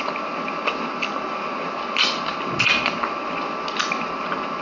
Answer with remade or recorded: recorded